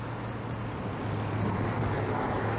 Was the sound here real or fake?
real